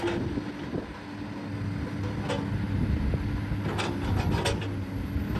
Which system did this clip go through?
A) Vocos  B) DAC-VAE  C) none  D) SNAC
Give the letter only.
C